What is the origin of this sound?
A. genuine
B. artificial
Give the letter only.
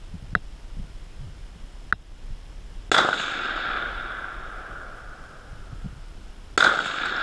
A